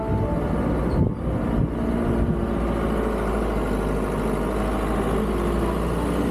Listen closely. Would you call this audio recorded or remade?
recorded